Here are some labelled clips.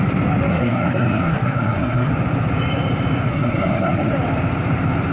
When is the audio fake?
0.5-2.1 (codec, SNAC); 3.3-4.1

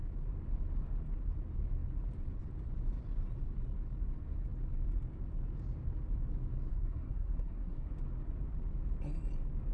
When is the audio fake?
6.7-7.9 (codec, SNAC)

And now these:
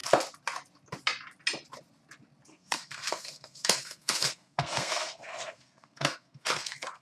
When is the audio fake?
2.5-7.0 (codec, SNAC)

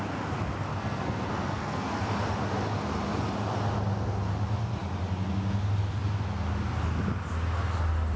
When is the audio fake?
0.7-2.0 (codec, SNAC)

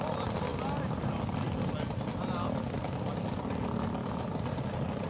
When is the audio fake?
none

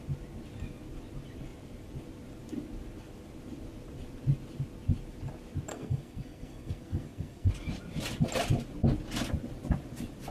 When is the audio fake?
5.7-7.5 (codec, SNAC)

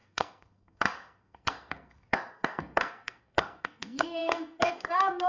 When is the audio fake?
0.0-5.3 (codec, SNAC)

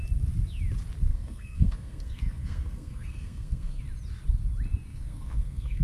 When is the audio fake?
1.1-3.8 (codec, SNAC); 4.9-5.8